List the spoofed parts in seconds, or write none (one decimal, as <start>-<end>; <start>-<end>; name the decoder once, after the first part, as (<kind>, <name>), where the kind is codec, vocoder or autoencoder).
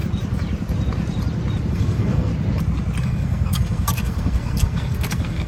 1.7-2.3 (codec, SNAC); 3.0-5.5